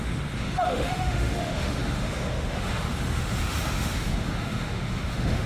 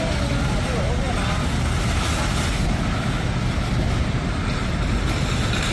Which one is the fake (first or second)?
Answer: first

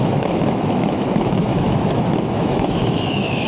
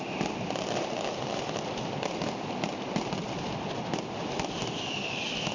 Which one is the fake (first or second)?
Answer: first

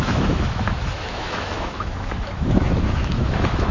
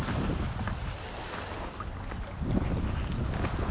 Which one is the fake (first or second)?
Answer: first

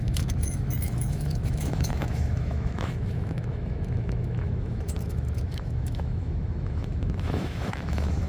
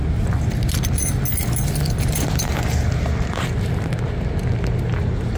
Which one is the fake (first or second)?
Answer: first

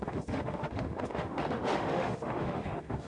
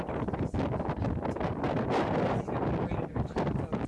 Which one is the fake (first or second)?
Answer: first